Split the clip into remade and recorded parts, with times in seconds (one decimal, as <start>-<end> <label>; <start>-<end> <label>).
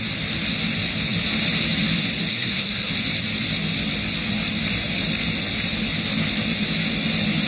0.0-2.3 recorded; 2.3-2.9 remade; 2.9-7.5 recorded